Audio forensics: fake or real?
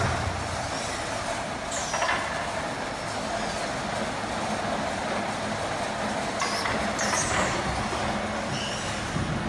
real